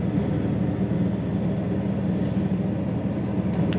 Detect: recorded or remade recorded